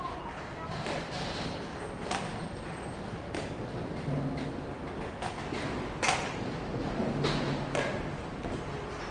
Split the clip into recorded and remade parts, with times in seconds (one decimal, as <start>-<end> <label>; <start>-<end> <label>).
0.0-9.1 recorded